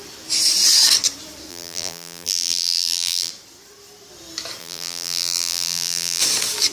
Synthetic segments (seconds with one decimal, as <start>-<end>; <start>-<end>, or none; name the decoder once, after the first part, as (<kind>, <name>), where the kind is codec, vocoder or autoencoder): 1.5-3.3 (vocoder, BigVGAN v2); 4.6-6.2